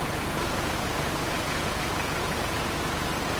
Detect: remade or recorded remade